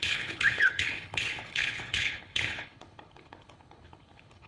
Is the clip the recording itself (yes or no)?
no